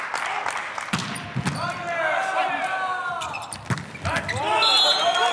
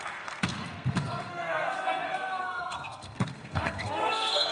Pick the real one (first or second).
first